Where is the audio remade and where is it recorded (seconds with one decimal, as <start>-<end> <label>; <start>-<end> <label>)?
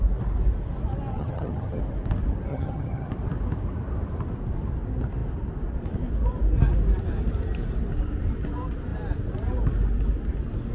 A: 0.0-1.1 recorded; 1.1-1.8 remade; 1.8-2.5 recorded; 2.5-3.1 remade; 3.1-10.7 recorded